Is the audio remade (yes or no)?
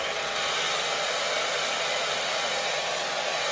no